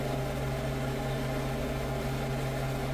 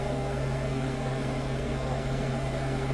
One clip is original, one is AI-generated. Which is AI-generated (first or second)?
second